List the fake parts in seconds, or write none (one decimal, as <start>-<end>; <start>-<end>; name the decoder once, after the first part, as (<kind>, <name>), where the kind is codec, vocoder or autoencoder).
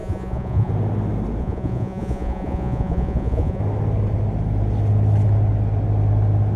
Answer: 0.0-0.7 (vocoder, Vocos); 1.4-3.6